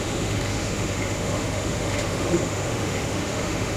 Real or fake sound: fake